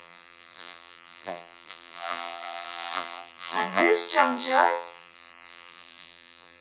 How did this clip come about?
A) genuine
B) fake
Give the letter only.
B